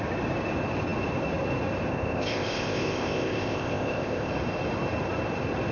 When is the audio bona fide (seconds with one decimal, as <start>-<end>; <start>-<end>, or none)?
0.0-1.9; 4.3-5.7